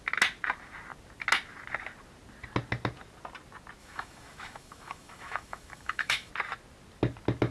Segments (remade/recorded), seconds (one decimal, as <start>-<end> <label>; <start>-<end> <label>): 0.0-3.8 recorded; 3.8-6.3 remade; 6.3-7.5 recorded